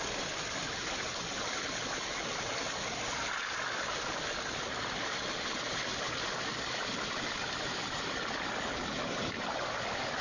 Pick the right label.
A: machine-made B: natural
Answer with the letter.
B